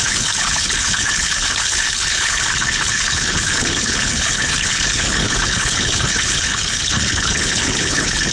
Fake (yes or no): yes